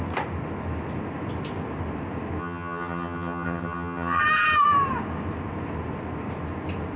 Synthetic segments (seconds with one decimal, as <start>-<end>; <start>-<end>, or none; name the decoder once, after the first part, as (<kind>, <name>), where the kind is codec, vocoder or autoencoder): 2.4-4.2 (vocoder, HiFi-GAN)